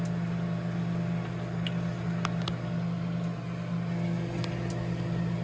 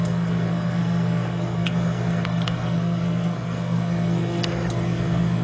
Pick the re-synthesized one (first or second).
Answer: second